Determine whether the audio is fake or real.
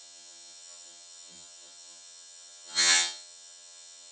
fake